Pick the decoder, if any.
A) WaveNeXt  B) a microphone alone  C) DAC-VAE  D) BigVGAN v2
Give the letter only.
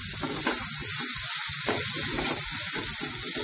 B